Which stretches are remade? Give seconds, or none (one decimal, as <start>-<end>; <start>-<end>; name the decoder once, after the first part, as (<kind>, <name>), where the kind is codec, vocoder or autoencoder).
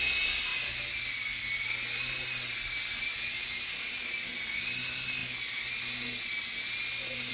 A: none